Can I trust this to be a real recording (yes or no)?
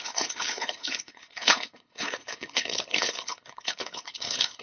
no